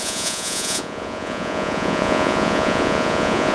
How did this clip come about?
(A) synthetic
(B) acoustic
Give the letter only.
A